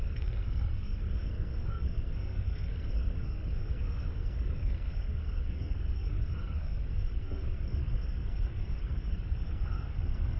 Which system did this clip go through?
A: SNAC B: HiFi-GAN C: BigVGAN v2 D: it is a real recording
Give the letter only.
A